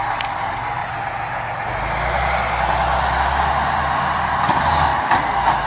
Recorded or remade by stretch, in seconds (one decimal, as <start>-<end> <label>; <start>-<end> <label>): 0.0-0.8 recorded; 0.8-4.2 remade; 4.2-5.7 recorded